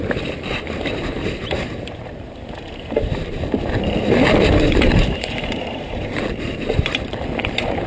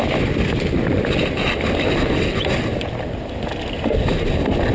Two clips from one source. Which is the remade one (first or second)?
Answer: first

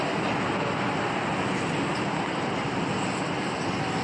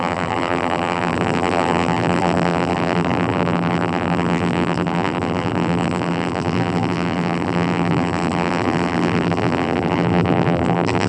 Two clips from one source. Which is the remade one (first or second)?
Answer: second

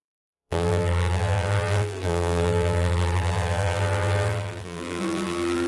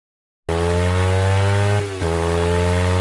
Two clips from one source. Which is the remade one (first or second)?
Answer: first